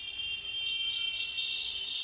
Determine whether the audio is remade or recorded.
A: recorded